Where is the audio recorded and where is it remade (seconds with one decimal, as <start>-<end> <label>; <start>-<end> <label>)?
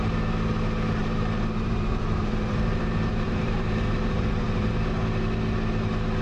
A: 0.0-1.0 recorded; 1.0-4.7 remade; 4.7-6.2 recorded